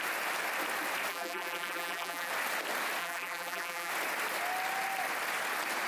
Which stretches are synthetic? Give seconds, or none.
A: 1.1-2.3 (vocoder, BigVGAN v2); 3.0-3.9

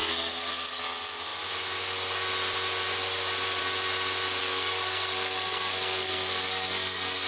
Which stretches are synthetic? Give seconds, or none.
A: 0.0-0.8 (codec, SNAC); 4.4-7.3

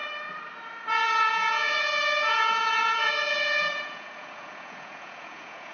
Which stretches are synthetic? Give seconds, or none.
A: 1.3-5.7 (vocoder, Vocos)

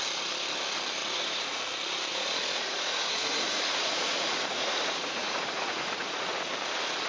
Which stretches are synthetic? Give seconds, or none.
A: 1.0-1.6 (vocoder, Vocos); 2.1-6.4

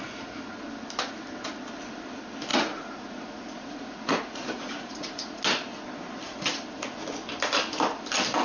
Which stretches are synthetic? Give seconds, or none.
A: 2.5-5.4 (vocoder, Vocos)

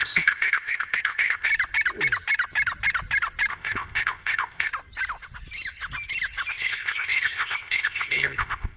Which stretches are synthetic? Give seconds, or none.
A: 0.0-1.5 (codec, ZipCodec); 3.5-4.7; 6.5-8.8